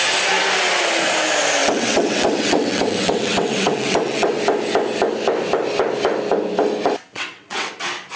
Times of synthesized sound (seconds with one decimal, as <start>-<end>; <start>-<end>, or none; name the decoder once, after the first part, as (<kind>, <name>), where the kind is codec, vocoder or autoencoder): 1.6-4.4 (vocoder, WaveNeXt); 7.1-7.7